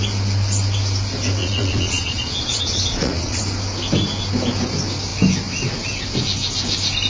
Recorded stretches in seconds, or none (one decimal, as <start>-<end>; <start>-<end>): 0.0-1.4; 3.4-7.1